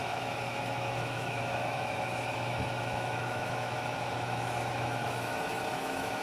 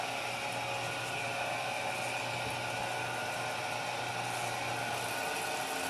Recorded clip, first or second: second